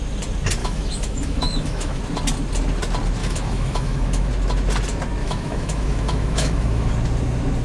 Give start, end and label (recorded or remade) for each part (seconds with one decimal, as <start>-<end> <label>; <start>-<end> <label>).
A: 0.0-0.6 recorded; 0.6-2.0 remade; 2.0-3.2 recorded; 3.2-4.3 remade; 4.3-5.2 recorded; 5.2-6.9 remade; 6.9-7.6 recorded